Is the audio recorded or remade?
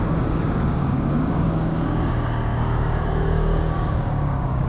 remade